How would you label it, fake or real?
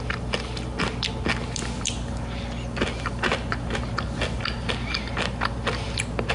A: real